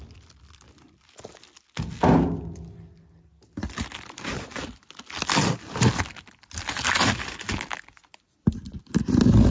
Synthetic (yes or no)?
no